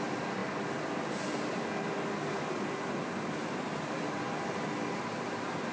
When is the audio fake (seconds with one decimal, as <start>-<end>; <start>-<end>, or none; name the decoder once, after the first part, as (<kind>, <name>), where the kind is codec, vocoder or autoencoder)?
none